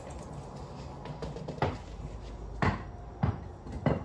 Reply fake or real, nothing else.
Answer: real